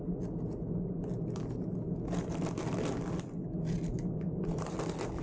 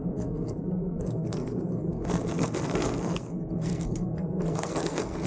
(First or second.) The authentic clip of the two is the first